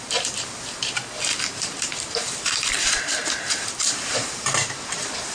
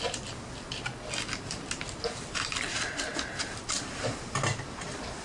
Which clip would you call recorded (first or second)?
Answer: second